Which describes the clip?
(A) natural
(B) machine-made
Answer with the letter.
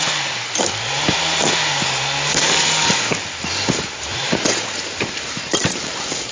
B